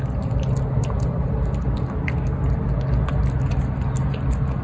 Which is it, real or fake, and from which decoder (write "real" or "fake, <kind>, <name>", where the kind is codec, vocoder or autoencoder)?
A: real